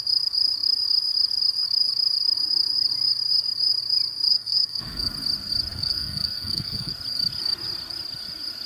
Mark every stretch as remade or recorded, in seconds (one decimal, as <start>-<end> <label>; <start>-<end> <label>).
0.0-4.3 recorded; 4.3-5.1 remade; 5.1-5.7 recorded; 5.7-6.9 remade; 6.9-8.7 recorded